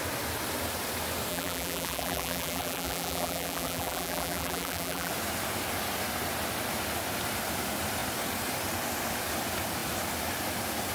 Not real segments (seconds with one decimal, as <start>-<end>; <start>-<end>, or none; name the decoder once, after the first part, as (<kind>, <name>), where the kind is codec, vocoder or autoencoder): 1.3-5.1 (vocoder, BigVGAN v2)